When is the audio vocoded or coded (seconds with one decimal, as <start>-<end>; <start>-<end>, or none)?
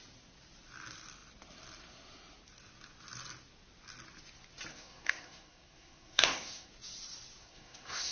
4.7-6.7; 7.4-8.1